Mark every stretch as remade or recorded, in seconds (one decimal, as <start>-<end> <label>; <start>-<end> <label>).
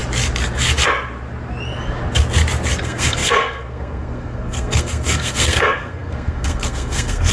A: 0.0-2.8 recorded; 2.8-7.3 remade